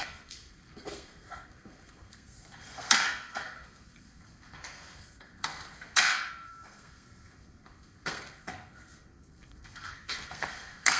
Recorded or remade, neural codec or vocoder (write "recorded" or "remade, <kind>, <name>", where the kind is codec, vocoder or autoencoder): remade, codec, SNAC